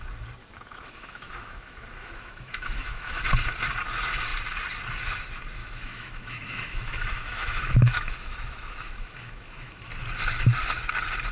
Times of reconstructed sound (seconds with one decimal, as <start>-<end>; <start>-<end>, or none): 0.4-3.2; 5.6-9.9